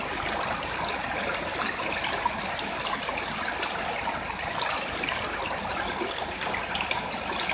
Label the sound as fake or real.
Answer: real